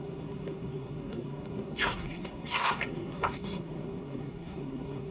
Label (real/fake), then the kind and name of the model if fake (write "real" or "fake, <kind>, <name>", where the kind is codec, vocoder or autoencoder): fake, codec, SNAC